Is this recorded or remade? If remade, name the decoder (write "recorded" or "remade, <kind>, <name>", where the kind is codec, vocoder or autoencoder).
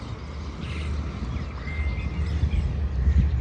recorded